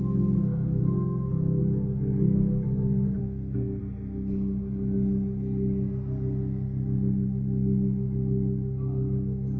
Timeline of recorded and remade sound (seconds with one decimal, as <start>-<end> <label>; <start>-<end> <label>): 0.0-0.8 recorded; 0.8-1.6 remade; 1.6-3.2 recorded; 3.2-3.8 remade; 3.8-9.6 recorded